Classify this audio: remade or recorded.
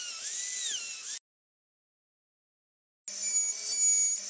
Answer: recorded